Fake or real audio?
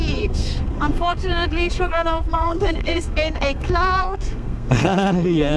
fake